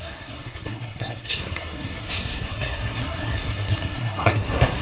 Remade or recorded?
remade